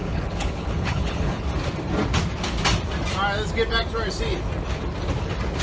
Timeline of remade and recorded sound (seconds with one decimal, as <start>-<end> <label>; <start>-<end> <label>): 0.0-1.5 remade; 1.5-5.6 recorded